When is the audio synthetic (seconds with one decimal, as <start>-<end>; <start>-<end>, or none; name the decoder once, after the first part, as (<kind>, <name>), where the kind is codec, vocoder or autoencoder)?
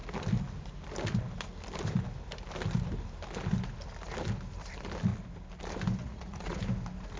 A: 6.0-6.6 (vocoder, Vocos)